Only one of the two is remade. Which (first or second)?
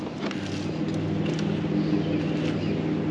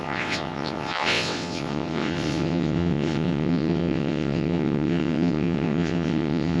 second